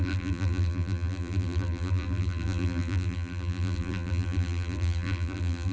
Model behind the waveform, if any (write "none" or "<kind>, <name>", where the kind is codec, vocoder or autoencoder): vocoder, BigVGAN v2